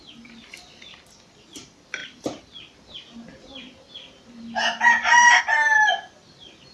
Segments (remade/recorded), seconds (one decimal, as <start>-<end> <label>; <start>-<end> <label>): 0.0-6.7 recorded